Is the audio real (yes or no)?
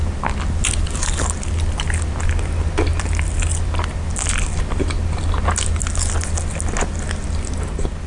yes